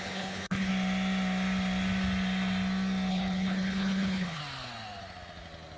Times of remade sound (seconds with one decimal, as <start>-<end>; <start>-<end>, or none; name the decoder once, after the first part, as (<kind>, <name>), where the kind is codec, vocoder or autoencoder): 0.0-0.7 (codec, HILCodec); 3.1-4.4